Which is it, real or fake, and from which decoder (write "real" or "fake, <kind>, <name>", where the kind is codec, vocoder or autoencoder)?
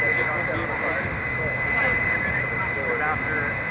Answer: real